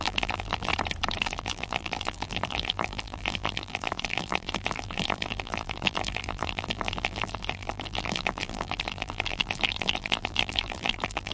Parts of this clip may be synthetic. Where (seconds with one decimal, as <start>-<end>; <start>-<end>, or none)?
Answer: 0.0-0.7; 1.2-11.3